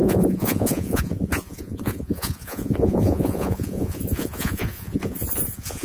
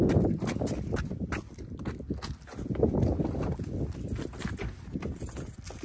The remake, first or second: first